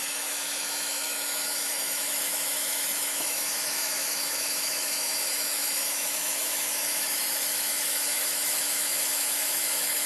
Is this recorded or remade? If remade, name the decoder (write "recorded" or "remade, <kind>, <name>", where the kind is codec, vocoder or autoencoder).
remade, autoencoder, DAC-VAE